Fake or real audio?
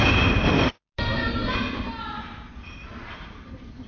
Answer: real